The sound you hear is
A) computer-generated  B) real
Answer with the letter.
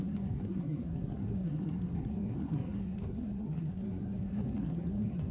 A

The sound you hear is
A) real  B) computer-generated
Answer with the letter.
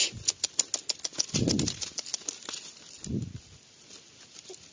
A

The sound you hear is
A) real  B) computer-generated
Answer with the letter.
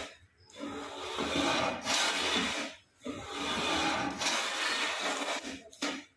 A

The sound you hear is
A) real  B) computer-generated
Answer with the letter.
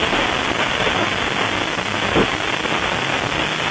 A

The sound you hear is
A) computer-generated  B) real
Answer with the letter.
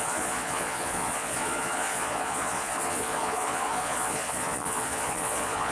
A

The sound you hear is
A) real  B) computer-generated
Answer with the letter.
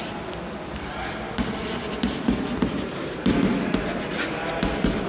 B